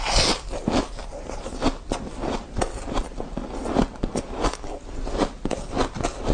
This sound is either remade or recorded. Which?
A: recorded